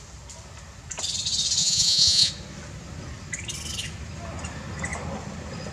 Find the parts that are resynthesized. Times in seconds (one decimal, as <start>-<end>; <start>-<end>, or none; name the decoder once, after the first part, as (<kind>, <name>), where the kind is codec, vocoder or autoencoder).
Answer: 1.6-2.3 (vocoder, Vocos)